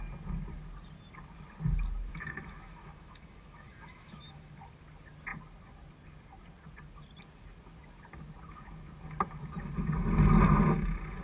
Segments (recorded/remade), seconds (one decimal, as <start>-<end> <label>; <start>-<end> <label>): 0.0-2.1 recorded; 2.1-4.5 remade; 4.5-11.2 recorded